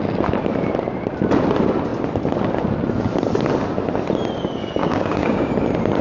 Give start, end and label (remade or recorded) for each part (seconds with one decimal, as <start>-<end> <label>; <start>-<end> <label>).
0.0-4.8 recorded; 4.8-5.5 remade; 5.5-6.0 recorded